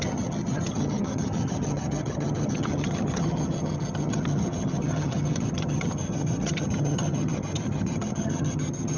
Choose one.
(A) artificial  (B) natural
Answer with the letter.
A